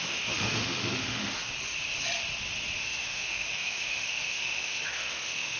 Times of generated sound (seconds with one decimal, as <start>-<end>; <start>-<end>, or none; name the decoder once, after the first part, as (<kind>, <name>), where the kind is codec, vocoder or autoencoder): 0.0-1.4 (autoencoder, DAC-VAE); 2.8-5.6